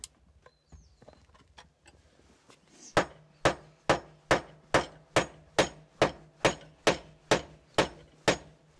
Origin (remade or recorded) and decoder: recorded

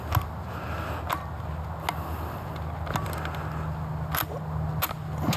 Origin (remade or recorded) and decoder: recorded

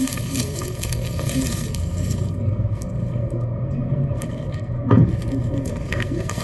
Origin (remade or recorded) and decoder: remade, codec, SNAC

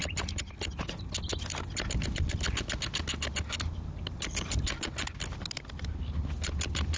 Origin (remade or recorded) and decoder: recorded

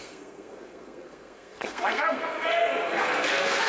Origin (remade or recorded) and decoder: remade, codec, SNAC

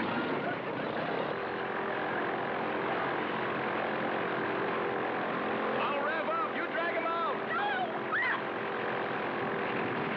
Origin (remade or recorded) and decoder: recorded